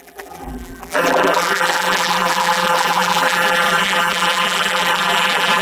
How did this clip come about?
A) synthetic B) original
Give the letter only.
A